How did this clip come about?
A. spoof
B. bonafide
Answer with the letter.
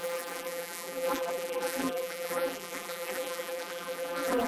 A